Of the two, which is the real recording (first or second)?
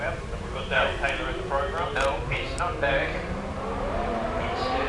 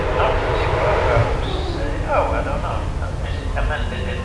second